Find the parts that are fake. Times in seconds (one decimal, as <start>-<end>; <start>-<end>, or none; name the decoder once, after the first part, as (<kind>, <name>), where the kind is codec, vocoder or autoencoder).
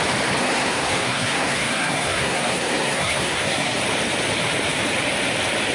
0.4-3.8 (codec, SNAC)